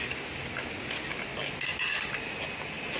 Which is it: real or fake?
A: real